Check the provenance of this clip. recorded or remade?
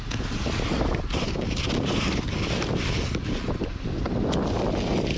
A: recorded